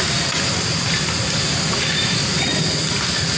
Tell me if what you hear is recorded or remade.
recorded